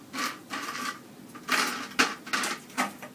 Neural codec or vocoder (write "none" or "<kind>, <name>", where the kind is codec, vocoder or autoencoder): none